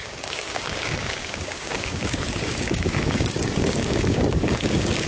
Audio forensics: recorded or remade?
remade